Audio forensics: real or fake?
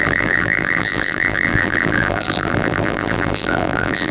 fake